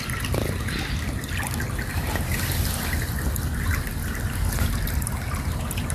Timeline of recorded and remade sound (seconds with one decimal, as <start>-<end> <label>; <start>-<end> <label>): 0.0-5.9 recorded